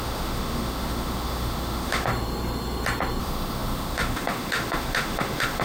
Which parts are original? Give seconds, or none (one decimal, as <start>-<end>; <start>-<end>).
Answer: 2.1-3.2